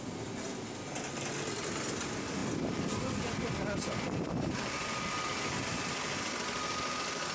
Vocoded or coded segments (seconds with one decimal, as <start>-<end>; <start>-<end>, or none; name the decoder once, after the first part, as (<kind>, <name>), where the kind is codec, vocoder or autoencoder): none